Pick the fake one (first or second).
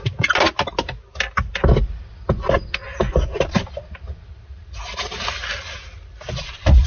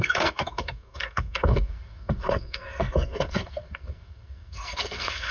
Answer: second